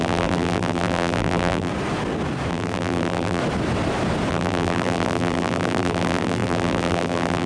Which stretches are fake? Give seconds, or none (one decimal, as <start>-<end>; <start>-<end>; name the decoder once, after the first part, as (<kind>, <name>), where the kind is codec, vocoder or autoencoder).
0.0-1.7 (vocoder, BigVGAN v2); 2.5-3.4; 4.3-7.5